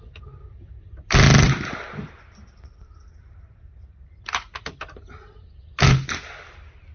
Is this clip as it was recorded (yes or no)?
yes